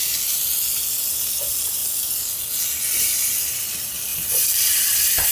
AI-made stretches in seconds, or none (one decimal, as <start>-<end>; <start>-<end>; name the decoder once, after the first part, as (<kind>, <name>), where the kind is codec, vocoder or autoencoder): 4.1-4.8 (vocoder, BigVGAN v2)